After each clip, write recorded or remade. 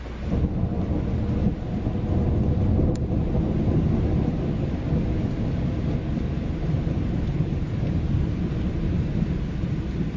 recorded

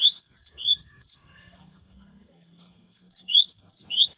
remade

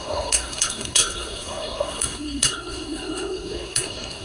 remade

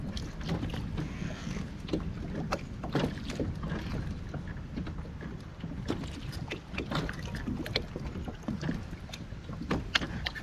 recorded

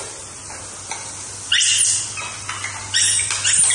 recorded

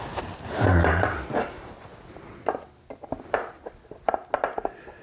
recorded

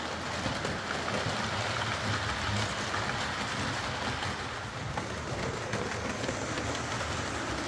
recorded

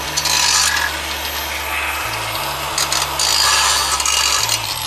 recorded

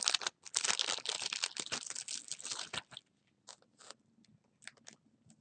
recorded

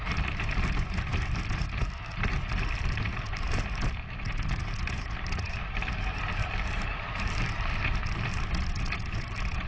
recorded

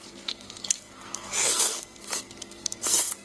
remade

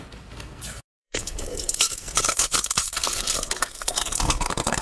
remade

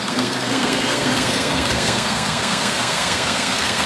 remade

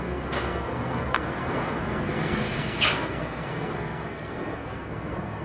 remade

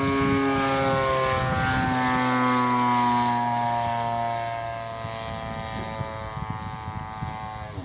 recorded